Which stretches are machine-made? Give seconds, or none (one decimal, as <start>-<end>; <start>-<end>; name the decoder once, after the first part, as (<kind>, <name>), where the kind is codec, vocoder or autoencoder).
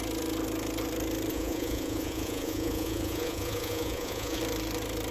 1.3-4.4 (vocoder, Vocos)